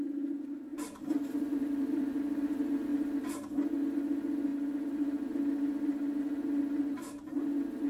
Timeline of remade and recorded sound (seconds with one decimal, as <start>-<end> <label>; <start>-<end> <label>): 0.0-0.7 recorded; 0.7-2.2 remade; 2.2-7.9 recorded

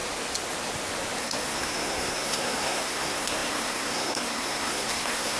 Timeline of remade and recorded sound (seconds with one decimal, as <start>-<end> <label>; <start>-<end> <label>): 0.0-1.2 recorded; 1.2-5.4 remade

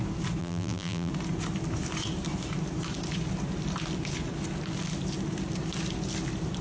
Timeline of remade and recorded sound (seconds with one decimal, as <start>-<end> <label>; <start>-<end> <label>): 0.0-0.4 recorded; 0.4-1.1 remade; 1.1-6.6 recorded

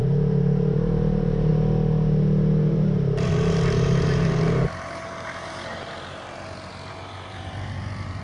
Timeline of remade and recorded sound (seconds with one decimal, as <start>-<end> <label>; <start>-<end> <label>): 0.0-1.5 remade; 1.5-2.6 recorded; 2.6-8.2 remade